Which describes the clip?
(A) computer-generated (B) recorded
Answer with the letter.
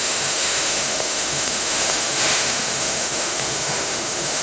A